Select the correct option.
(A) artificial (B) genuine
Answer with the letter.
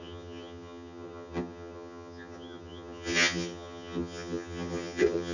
A